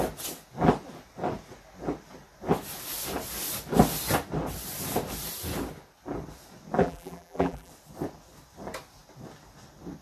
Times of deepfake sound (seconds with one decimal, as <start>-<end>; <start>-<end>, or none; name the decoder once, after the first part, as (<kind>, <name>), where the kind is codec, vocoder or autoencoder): 6.8-7.7 (vocoder, BigVGAN v2)